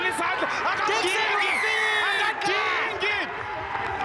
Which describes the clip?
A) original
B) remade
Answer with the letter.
A